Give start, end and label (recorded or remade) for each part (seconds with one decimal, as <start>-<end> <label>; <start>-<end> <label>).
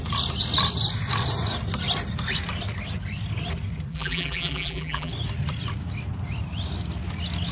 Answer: 0.0-3.9 recorded; 3.9-5.1 remade; 5.1-7.5 recorded